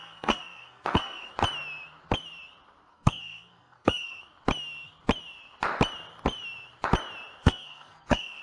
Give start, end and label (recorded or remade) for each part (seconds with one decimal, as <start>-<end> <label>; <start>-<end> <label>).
0.0-1.3 remade; 1.3-2.9 recorded; 2.9-4.2 remade; 4.2-7.4 recorded; 7.4-8.4 remade